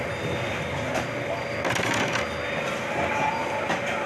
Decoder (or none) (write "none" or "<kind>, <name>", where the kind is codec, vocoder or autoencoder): none